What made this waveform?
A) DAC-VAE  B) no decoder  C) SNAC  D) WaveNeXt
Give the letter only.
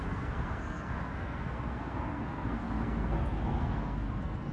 C